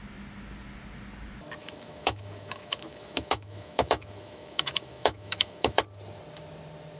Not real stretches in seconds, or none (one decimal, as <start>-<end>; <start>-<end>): 1.6-5.8

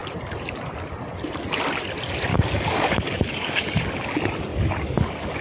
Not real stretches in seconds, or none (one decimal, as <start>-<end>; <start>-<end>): 2.3-3.9; 4.5-5.4

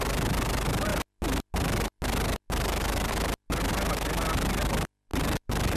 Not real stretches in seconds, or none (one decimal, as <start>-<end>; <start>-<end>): none

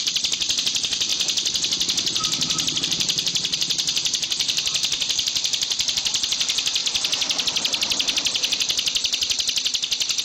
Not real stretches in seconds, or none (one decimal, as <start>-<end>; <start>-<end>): 0.0-1.1; 2.8-6.8